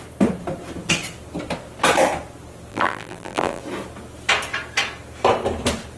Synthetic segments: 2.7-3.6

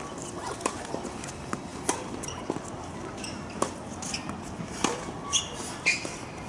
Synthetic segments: none

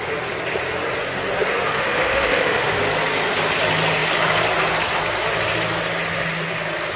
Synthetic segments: 1.7-2.8

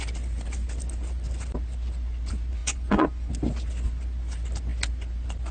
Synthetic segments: 2.6-3.3

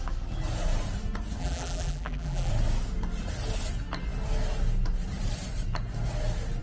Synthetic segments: 1.4-2.5

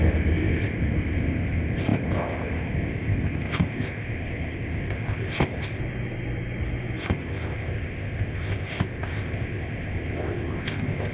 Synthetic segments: 0.0-5.8; 7.0-11.1

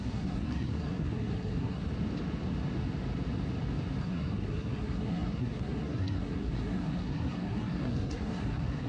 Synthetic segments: 0.0-1.9; 4.0-8.9

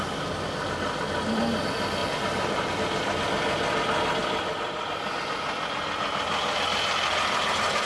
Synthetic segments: 2.0-3.2; 4.2-4.9